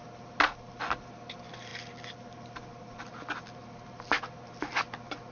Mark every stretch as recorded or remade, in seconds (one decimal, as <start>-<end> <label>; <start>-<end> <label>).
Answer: 0.0-5.3 recorded

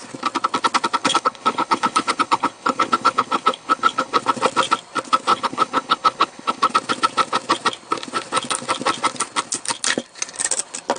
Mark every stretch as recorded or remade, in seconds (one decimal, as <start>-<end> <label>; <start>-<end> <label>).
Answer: 0.0-1.0 recorded; 1.0-4.2 remade; 4.2-5.3 recorded; 5.3-6.7 remade; 6.7-11.0 recorded

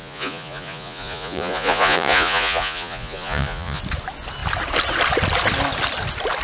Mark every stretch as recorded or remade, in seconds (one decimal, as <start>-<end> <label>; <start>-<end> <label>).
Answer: 0.0-3.8 remade; 3.8-6.4 recorded

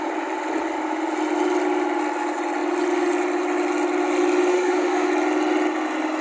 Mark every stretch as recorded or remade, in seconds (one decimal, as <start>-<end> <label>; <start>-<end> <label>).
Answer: 0.0-4.5 recorded; 4.5-5.1 remade; 5.1-6.2 recorded

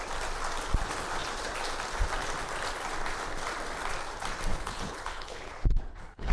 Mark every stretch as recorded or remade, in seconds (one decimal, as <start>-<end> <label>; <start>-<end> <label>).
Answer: 0.0-4.5 recorded; 4.5-6.3 remade

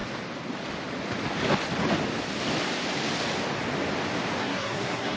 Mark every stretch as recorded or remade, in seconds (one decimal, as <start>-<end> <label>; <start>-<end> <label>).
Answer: 0.0-4.4 recorded; 4.4-5.2 remade

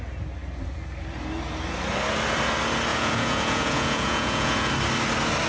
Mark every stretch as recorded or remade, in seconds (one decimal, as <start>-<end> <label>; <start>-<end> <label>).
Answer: 0.0-2.9 recorded; 2.9-4.7 remade; 4.7-5.5 recorded

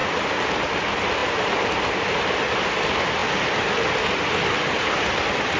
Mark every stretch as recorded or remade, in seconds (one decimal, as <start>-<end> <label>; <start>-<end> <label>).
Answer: 0.0-5.6 recorded